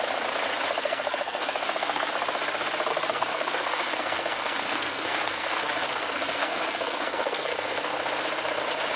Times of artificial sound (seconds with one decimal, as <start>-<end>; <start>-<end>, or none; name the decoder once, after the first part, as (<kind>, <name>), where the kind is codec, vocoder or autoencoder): 0.8-2.1 (codec, SNAC); 2.9-7.9